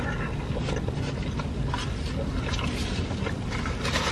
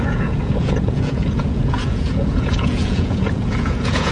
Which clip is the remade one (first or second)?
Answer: second